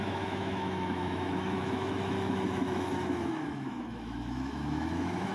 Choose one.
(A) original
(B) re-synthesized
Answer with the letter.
B